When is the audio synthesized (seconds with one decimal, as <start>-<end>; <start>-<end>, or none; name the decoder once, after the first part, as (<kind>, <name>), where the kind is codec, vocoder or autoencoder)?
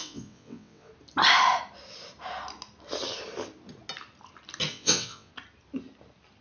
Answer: 0.0-0.9 (vocoder, WaveNeXt); 4.7-5.3